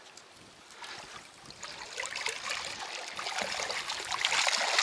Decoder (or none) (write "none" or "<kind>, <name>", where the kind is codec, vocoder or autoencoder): none